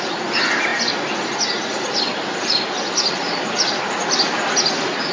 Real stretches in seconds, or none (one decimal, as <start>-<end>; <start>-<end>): 0.0-5.1